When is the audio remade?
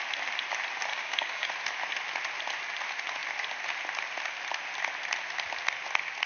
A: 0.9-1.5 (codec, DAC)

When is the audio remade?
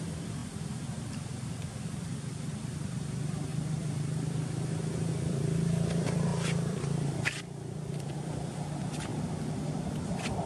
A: 0.0-0.4 (vocoder, BigVGAN v2); 1.1-9.1; 9.7-10.5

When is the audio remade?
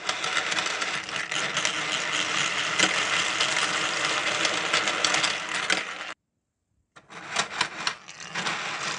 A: none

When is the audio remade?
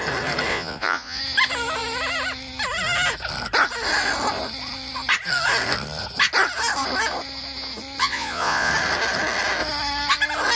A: 0.5-1.2 (vocoder, Vocos); 8.0-8.7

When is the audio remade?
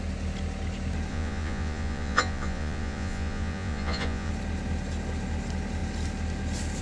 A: 1.1-4.3 (vocoder, Vocos)